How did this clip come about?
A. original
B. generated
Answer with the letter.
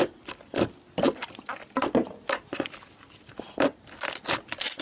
A